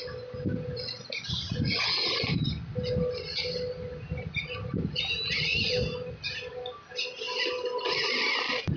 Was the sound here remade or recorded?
recorded